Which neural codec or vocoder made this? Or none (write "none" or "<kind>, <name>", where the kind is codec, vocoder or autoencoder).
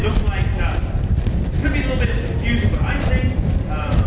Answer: none